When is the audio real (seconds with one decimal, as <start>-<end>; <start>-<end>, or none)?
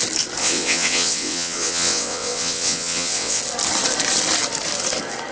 0.0-0.4; 3.4-5.3